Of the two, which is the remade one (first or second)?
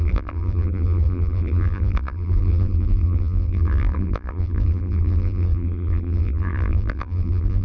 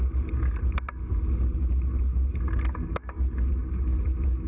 first